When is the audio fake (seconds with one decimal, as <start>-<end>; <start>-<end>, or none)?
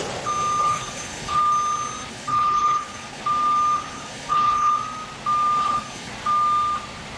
0.6-1.4; 2.1-3.2; 3.9-4.7; 5.6-6.1